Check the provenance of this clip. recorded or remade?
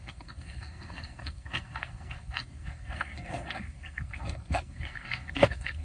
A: remade